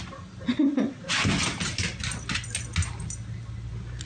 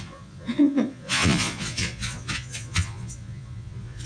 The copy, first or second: second